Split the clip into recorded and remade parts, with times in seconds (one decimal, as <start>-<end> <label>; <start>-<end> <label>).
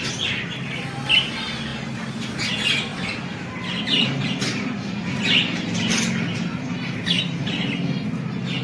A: 0.0-8.6 recorded